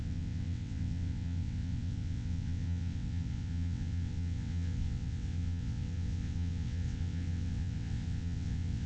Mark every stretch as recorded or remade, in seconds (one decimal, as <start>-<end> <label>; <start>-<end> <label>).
0.0-8.9 remade